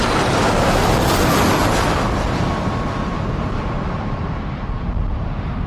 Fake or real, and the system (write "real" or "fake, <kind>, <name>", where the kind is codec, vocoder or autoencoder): real